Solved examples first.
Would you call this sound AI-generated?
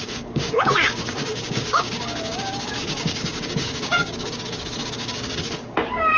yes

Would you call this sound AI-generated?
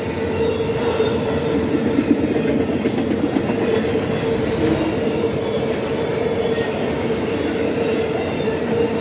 no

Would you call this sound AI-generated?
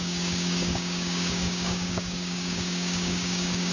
yes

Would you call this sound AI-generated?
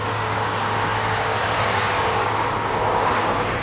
yes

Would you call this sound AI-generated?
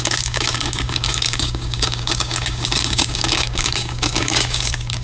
yes